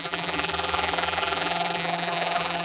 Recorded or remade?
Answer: remade